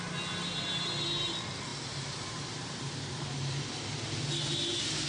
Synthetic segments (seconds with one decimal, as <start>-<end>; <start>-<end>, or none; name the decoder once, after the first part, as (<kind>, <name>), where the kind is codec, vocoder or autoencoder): 1.7-4.2 (vocoder, BigVGAN v2)

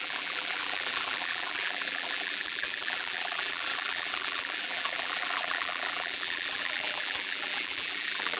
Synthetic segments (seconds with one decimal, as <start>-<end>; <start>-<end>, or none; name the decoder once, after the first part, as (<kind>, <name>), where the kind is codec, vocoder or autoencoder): 0.0-8.4 (vocoder, BigVGAN v2)

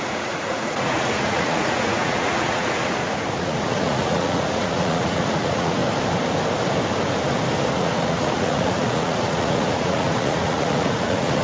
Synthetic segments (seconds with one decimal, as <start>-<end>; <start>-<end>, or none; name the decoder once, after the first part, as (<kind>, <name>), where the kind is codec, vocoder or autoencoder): 0.0-5.8 (vocoder, Vocos); 7.7-11.4

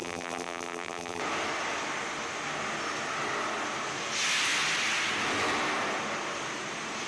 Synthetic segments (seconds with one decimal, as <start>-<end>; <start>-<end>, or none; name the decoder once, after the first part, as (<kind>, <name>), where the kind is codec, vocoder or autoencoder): 0.0-1.2 (vocoder, BigVGAN v2)